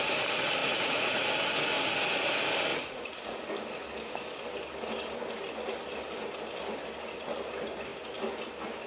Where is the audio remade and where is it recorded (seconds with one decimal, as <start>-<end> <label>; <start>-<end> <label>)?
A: 0.0-0.6 recorded; 0.6-1.3 remade; 1.3-2.7 recorded; 2.7-3.4 remade; 3.4-8.9 recorded